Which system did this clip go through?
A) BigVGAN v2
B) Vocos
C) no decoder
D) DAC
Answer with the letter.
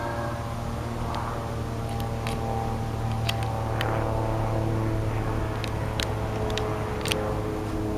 C